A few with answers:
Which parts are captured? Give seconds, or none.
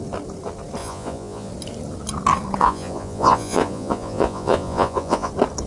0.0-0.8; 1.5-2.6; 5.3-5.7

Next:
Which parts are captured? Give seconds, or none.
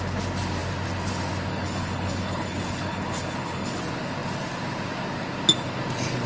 0.0-1.5; 3.8-6.3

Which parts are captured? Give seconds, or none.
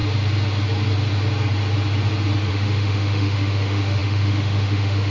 0.0-2.5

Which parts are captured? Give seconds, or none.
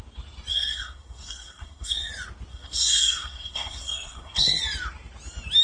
0.0-0.5; 2.1-2.5; 4.6-5.6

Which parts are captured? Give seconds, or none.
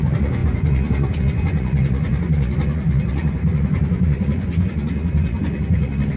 none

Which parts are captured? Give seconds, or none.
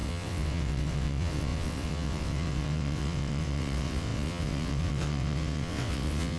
none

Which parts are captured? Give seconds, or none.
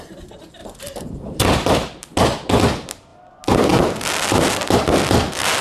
0.0-0.6; 1.4-5.6